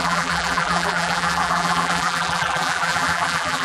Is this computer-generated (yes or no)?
yes